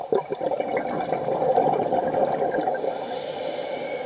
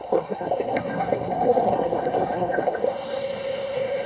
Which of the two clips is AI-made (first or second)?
second